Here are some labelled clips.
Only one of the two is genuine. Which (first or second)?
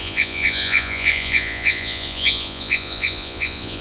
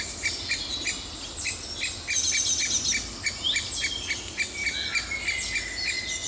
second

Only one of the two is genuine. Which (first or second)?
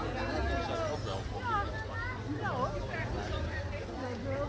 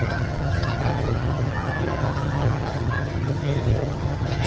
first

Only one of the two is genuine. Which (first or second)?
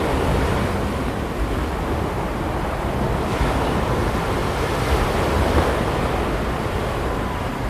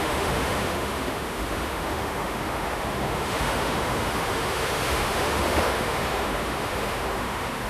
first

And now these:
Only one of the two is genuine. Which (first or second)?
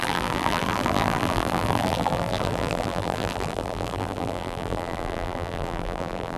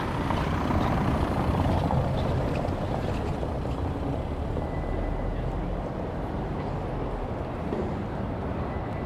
second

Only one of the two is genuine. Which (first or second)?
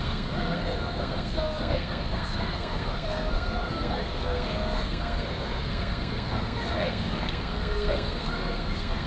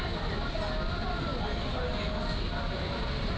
second